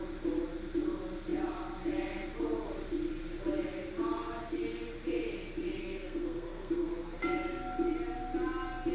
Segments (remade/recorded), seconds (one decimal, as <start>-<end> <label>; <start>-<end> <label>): 0.0-5.8 recorded; 5.8-7.2 remade; 7.2-8.9 recorded